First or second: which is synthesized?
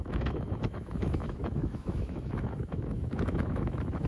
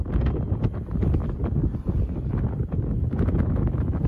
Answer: first